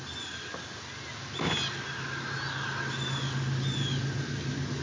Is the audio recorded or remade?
recorded